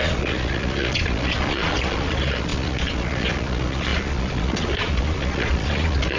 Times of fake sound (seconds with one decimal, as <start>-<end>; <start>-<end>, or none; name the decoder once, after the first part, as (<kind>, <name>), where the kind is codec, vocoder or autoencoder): 0.0-6.2 (vocoder, Vocos)